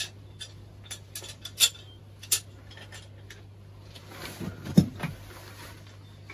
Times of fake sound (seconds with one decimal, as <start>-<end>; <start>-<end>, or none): none